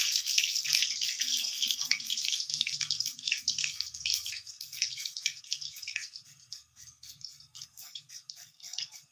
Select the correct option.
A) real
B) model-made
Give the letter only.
B